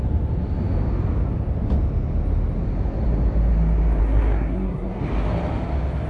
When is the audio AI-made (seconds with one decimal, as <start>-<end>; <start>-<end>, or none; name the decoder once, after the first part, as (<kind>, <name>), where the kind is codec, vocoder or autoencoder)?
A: 4.0-5.0 (codec, SNAC)